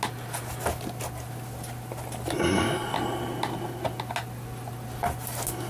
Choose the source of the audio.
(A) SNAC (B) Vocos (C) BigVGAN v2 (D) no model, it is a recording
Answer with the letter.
D